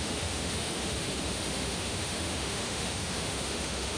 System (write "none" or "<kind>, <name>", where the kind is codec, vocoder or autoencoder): autoencoder, DAC-VAE